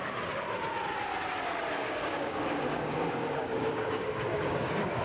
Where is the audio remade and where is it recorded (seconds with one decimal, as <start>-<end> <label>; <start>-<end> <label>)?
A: 0.0-1.8 recorded; 1.8-5.0 remade